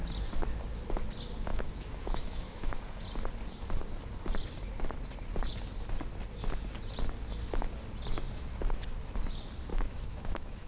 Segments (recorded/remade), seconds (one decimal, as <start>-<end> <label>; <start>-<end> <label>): 0.0-1.5 recorded; 1.5-2.8 remade; 2.8-9.7 recorded; 9.7-10.7 remade